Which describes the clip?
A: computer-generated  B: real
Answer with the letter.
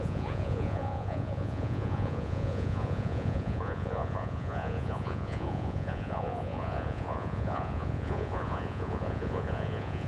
A